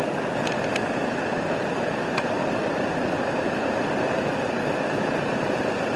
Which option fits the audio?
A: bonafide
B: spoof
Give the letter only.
A